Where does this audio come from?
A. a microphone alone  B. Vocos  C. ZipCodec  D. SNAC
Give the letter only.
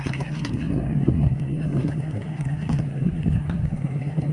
D